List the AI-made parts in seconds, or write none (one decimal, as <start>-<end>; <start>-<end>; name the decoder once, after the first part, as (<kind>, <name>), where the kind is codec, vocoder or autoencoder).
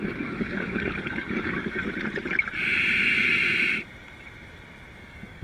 0.0-1.8 (codec, DAC); 5.0-5.4